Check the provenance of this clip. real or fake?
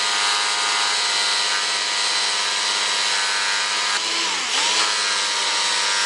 real